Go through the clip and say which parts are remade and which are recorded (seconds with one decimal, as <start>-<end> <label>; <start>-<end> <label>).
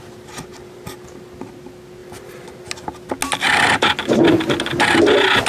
0.0-5.5 recorded